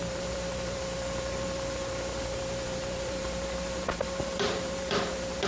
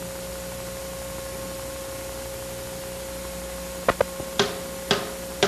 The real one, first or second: second